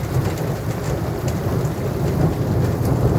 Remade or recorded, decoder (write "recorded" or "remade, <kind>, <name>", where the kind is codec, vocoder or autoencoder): recorded